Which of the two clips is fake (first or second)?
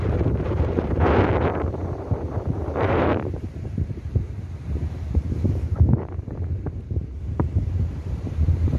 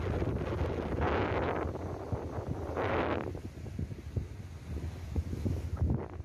first